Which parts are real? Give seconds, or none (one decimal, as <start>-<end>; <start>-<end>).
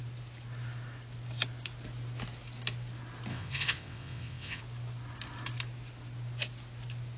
0.0-3.3; 4.6-7.2